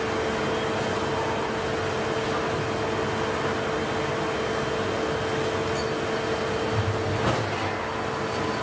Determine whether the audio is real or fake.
real